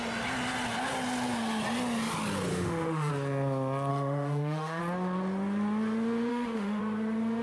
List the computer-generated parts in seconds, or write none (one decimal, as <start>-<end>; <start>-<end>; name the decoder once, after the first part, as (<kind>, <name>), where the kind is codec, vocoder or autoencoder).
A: 2.5-3.1 (autoencoder, DAC-VAE); 3.9-4.8; 6.3-6.8